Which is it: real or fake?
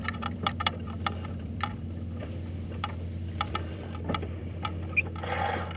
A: fake